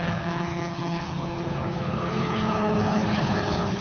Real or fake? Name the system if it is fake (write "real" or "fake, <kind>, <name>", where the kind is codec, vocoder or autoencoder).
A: fake, codec, HILCodec